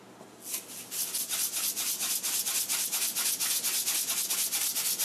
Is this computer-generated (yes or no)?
no